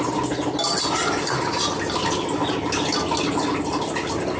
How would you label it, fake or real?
real